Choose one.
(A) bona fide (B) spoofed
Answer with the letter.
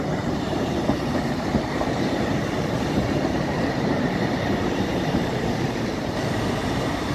B